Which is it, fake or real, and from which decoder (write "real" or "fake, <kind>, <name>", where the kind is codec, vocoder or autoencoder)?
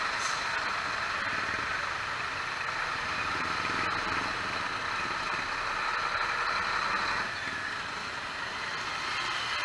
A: real